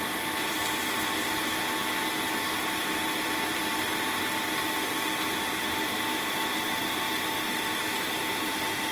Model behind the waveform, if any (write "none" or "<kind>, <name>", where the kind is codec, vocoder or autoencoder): none